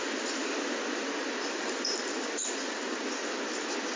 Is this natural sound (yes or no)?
yes